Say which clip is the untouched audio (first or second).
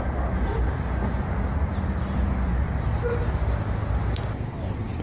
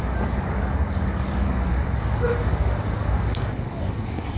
first